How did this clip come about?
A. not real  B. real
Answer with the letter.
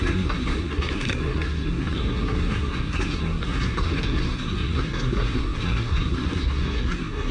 A